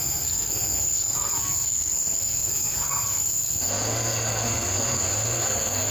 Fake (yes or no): yes